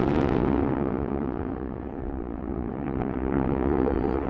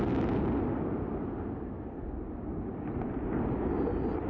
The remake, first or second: first